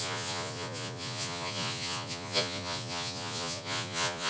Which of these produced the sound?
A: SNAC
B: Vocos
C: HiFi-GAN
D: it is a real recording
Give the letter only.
B